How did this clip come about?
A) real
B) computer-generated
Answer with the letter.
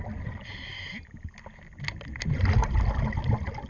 A